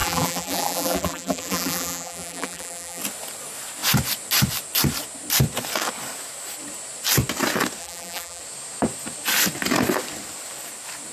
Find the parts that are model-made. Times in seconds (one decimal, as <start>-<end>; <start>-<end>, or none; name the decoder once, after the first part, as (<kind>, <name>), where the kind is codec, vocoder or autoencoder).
0.0-3.0 (vocoder, BigVGAN v2); 7.8-8.4